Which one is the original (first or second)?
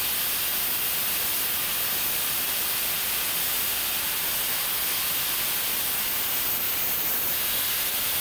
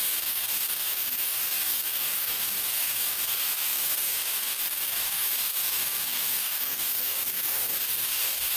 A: first